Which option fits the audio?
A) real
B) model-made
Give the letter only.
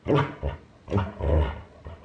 A